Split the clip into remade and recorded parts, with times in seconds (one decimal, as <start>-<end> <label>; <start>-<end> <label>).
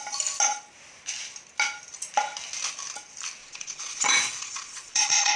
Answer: 0.0-3.4 recorded; 3.4-5.4 remade